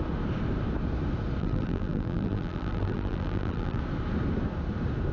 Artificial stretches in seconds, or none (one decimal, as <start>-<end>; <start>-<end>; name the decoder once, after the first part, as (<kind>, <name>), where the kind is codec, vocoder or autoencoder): 1.4-3.8 (vocoder, BigVGAN v2)